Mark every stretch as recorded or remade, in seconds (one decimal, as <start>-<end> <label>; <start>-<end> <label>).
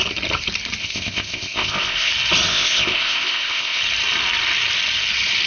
0.0-0.8 recorded; 0.8-2.1 remade; 2.1-2.5 recorded; 2.5-3.8 remade; 3.8-5.5 recorded